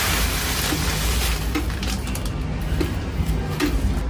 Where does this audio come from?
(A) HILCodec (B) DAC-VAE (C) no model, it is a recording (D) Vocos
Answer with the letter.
C